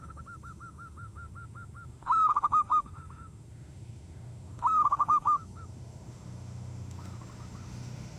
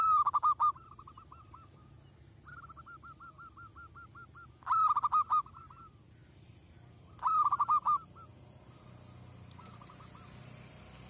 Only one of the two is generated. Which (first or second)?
first